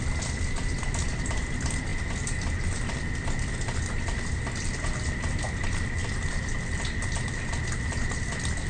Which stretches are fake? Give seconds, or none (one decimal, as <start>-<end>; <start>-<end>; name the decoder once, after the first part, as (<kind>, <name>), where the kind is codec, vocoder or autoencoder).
none